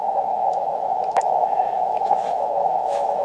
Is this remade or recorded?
remade